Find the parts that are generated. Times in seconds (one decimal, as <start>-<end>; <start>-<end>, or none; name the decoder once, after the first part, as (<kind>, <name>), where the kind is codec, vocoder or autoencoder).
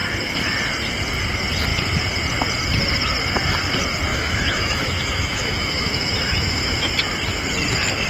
4.1-6.9 (autoencoder, DAC-VAE)